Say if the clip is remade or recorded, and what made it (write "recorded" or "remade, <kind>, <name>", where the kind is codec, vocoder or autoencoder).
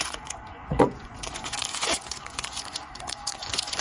remade, vocoder, Vocos